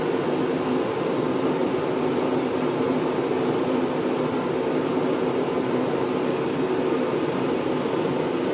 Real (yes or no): yes